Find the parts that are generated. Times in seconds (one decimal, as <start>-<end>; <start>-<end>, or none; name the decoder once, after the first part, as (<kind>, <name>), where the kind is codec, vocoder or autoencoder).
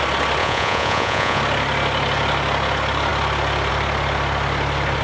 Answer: 0.4-1.4 (vocoder, Vocos)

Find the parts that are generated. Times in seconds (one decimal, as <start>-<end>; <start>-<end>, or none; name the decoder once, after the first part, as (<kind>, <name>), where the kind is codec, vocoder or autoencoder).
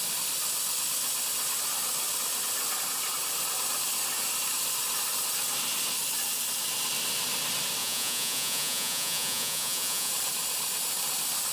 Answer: 7.8-10.1 (vocoder, Vocos)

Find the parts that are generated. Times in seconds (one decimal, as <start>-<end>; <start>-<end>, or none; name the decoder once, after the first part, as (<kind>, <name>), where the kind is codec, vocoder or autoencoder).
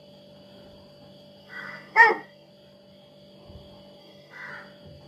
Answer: 1.4-2.5 (codec, SNAC); 4.0-4.5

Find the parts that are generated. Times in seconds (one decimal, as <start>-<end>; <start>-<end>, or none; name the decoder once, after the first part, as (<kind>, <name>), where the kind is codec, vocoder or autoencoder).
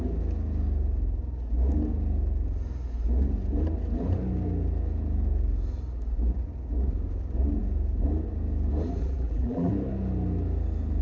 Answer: 9.0-9.7 (vocoder, BigVGAN v2)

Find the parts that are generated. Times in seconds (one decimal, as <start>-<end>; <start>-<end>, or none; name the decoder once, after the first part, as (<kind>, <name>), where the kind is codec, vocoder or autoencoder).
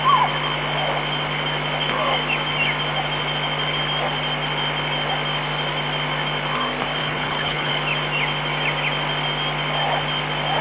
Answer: 7.0-7.7 (codec, HILCodec)